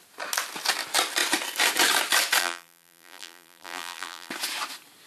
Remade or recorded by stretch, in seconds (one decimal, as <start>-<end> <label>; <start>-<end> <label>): 0.0-2.4 recorded; 2.4-4.3 remade; 4.3-5.1 recorded